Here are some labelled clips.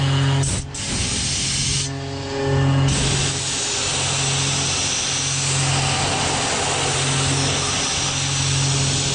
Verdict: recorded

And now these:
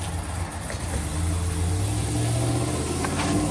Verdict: recorded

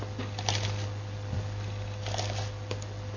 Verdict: recorded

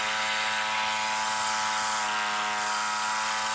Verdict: recorded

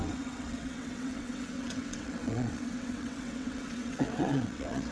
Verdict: remade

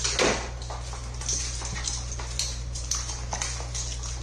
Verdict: recorded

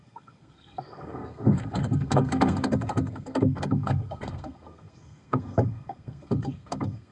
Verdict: remade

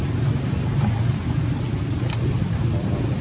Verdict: remade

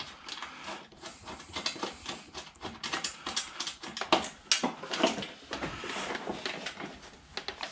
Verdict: recorded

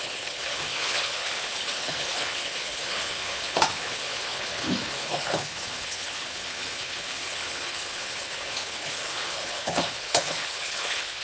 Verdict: remade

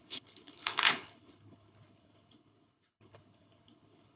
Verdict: remade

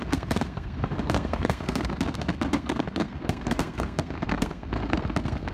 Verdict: remade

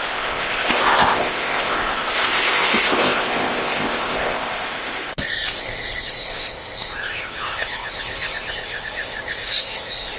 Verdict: remade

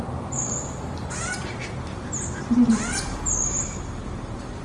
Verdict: remade